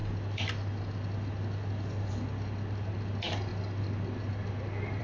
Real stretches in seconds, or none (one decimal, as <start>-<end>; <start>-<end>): 0.0-5.0